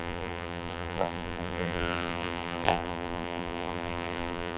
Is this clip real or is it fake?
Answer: fake